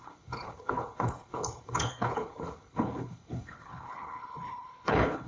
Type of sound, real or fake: fake